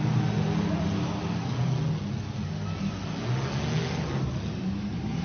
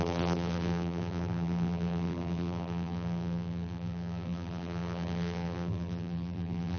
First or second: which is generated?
second